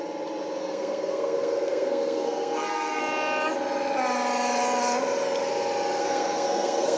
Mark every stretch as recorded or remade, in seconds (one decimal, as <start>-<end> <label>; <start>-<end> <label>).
0.0-0.6 recorded; 0.6-3.0 remade; 3.0-6.0 recorded; 6.0-7.0 remade